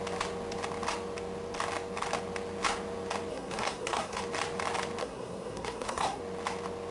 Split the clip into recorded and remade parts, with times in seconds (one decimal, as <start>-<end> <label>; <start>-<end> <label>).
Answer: 0.0-3.3 recorded; 3.3-4.2 remade; 4.2-5.0 recorded; 5.0-6.2 remade; 6.2-6.9 recorded